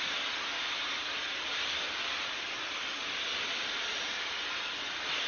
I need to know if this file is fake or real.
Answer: real